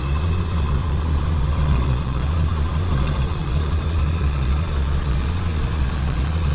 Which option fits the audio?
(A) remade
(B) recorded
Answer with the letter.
A